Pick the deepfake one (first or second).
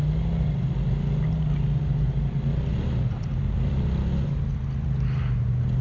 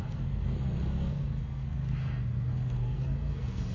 second